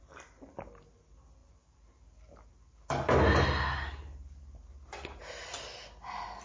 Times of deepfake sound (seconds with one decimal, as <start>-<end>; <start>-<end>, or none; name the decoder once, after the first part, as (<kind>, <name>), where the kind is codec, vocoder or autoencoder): none